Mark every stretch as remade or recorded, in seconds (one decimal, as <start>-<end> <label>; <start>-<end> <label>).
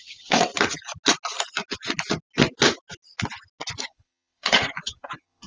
0.0-0.5 remade; 0.5-3.8 recorded; 3.8-5.5 remade